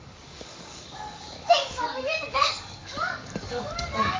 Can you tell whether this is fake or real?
fake